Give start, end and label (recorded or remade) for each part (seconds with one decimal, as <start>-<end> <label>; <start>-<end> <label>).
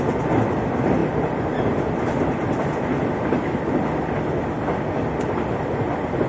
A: 0.0-6.3 recorded